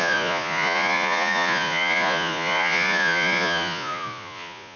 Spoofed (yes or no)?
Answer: yes